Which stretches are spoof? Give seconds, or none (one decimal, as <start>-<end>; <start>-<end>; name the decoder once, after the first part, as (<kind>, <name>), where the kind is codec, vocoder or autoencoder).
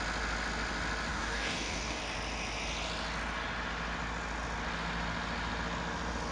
1.1-2.0 (codec, DAC)